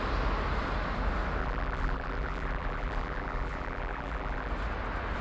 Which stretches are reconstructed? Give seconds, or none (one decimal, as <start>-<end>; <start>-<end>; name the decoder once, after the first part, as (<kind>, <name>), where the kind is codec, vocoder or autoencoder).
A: 1.4-4.5 (vocoder, BigVGAN v2)